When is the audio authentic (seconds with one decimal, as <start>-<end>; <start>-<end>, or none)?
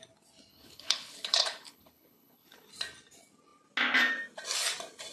0.0-0.5; 2.7-5.1